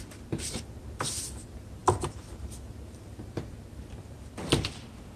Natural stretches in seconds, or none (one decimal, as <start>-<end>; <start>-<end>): 0.0-5.2